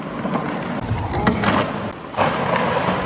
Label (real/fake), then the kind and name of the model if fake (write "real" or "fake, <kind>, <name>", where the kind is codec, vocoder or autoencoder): real